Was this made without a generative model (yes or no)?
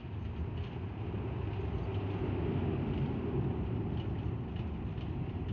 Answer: yes